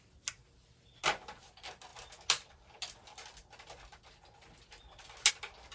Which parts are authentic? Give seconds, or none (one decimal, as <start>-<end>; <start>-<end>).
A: 0.0-5.7